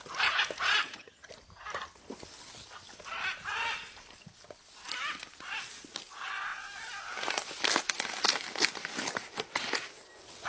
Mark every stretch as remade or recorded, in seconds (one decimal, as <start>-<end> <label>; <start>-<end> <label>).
0.0-0.8 recorded; 0.8-1.3 remade; 1.3-10.5 recorded

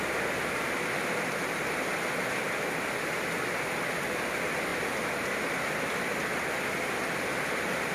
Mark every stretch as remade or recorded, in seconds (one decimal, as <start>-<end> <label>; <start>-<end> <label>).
0.0-7.9 recorded

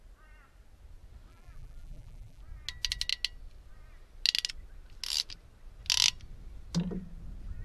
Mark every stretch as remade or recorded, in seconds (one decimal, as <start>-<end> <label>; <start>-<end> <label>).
0.0-1.3 recorded; 1.3-2.4 remade; 2.4-7.6 recorded

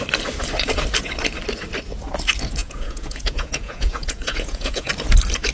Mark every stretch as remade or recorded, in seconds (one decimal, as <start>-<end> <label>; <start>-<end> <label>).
0.0-2.6 recorded; 2.6-4.9 remade; 4.9-5.5 recorded

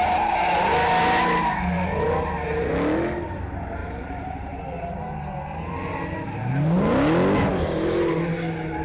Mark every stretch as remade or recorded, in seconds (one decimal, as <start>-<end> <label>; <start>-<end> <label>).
0.0-3.8 recorded; 3.8-4.6 remade; 4.6-8.8 recorded

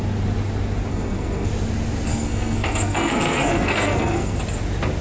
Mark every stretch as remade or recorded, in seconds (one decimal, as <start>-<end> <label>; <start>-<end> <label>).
0.0-0.9 recorded; 0.9-1.5 remade; 1.5-2.1 recorded; 2.1-4.4 remade; 4.4-5.0 recorded